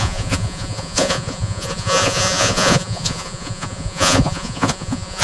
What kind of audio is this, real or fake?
fake